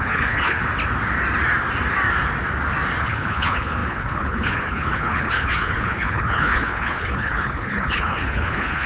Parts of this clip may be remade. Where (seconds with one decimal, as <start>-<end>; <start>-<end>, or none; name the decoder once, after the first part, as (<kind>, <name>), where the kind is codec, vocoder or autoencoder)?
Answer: 0.0-0.6 (codec, HILCodec); 3.0-8.9